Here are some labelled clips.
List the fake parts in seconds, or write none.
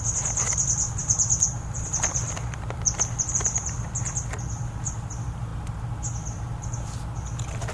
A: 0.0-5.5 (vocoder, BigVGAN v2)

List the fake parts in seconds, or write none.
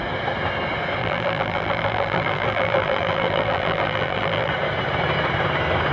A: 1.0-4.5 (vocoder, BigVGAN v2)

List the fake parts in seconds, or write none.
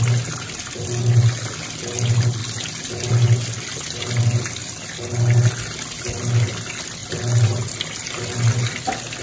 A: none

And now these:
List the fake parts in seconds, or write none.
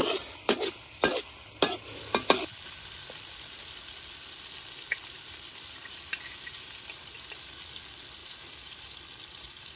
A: 5.5-7.4 (vocoder, BigVGAN v2); 8.2-8.9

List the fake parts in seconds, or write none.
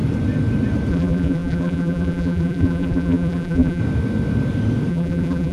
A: 0.9-3.8 (vocoder, BigVGAN v2); 4.9-5.5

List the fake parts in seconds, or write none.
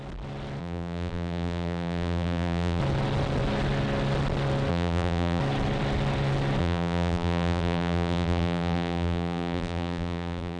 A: 0.6-2.8 (vocoder, BigVGAN v2); 4.7-5.4; 6.6-10.6